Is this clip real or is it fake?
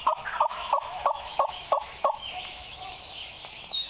fake